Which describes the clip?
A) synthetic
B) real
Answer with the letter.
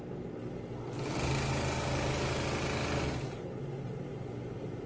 B